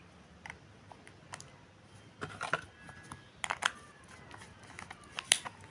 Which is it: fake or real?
real